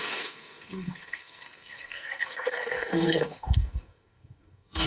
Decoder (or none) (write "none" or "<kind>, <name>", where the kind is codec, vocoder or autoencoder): codec, SNAC